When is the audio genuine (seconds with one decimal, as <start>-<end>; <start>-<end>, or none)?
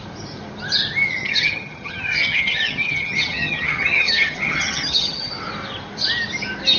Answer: 0.0-1.2; 5.3-6.8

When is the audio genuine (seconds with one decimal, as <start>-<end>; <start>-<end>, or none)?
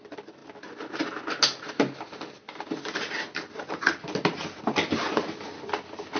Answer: 0.0-6.2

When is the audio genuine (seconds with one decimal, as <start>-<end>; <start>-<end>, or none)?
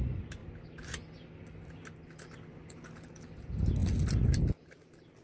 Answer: 0.0-5.2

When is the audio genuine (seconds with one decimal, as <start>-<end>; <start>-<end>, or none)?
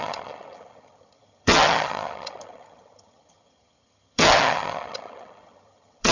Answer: none